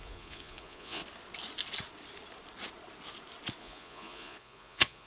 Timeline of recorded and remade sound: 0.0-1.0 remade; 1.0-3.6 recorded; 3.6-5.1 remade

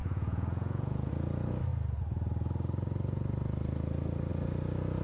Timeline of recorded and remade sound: 0.0-1.1 remade; 1.1-5.0 recorded

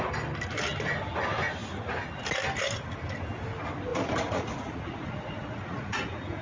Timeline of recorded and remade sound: 0.0-3.9 recorded; 3.9-6.4 remade

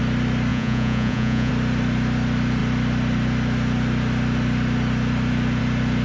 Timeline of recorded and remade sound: 0.0-0.5 recorded; 0.5-1.5 remade; 1.5-6.0 recorded